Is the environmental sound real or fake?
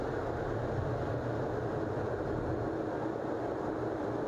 real